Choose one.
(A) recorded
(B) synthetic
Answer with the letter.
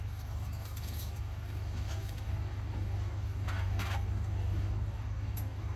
B